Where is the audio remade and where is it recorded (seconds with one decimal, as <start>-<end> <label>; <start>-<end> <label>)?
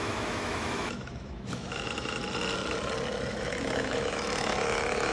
0.0-2.2 remade; 2.2-3.3 recorded; 3.3-5.1 remade